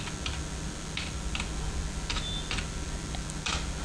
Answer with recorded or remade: remade